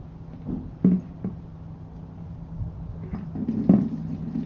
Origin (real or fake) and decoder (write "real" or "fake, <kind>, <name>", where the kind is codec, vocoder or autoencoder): real